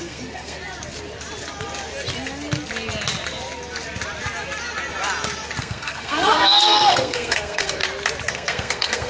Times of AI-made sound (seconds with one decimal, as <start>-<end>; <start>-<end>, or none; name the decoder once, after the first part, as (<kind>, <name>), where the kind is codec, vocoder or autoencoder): 0.0-0.6 (codec, SNAC); 5.6-7.8; 8.3-9.1